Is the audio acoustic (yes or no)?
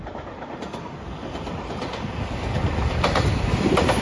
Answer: yes